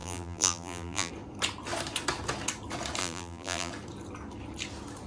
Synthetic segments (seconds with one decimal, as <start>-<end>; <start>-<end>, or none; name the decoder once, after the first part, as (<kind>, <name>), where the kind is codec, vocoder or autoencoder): 0.0-1.1 (vocoder, BigVGAN v2); 3.0-3.7